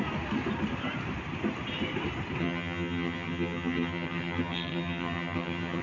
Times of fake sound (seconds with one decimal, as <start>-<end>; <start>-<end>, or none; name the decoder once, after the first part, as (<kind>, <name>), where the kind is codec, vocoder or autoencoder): 2.4-5.8 (vocoder, HiFi-GAN)